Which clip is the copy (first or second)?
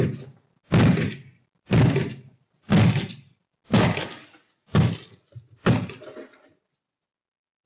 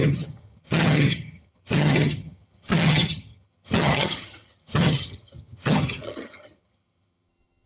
second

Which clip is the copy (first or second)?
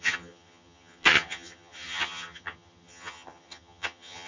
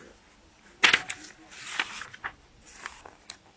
first